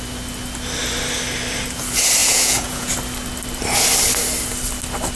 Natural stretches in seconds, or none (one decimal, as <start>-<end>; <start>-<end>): 0.0-2.2; 2.9-5.2